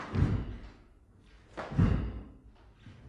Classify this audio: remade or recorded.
recorded